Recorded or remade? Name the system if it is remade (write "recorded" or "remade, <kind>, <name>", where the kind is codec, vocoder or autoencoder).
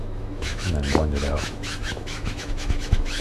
remade, autoencoder, DAC-VAE